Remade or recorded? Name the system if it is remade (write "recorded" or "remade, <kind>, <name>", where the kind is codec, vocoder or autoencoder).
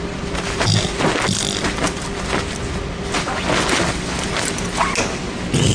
recorded